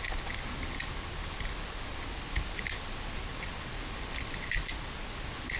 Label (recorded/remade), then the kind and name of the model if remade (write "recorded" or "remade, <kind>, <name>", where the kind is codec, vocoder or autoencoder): recorded